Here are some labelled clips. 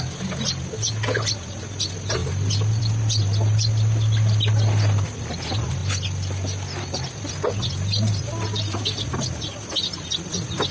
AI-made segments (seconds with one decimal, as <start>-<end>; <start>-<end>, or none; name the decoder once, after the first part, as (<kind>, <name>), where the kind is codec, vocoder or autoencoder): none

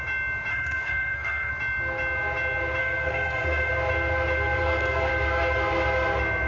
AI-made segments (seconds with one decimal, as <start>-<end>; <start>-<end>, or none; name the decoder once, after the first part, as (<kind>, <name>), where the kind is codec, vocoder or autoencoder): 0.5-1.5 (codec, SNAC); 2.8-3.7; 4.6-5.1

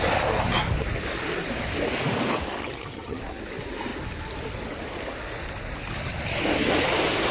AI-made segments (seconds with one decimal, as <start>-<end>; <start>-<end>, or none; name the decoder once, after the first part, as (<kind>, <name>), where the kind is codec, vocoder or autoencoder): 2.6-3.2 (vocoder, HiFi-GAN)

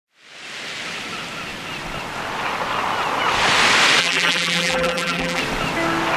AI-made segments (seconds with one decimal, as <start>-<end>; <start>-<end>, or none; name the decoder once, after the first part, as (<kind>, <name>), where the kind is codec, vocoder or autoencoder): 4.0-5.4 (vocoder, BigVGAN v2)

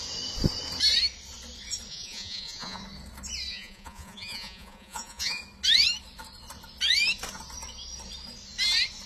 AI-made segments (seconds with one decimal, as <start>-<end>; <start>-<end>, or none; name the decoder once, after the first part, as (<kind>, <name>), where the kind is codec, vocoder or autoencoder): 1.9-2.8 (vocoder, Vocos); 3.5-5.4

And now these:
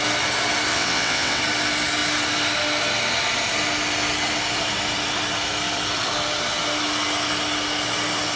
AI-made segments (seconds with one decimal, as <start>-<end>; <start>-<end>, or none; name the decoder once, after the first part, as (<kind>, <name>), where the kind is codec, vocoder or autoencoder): 0.7-1.4 (vocoder, WaveNeXt)